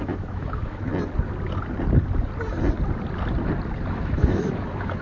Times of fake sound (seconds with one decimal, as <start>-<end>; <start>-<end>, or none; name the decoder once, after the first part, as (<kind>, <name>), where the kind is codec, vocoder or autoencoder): 0.0-0.9 (autoencoder, DAC-VAE); 3.9-5.0